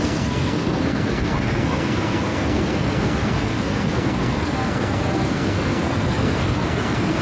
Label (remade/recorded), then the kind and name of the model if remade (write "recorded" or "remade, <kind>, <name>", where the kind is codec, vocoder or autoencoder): remade, codec, SNAC